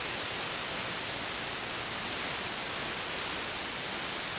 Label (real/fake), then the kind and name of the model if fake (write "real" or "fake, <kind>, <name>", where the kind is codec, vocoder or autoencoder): real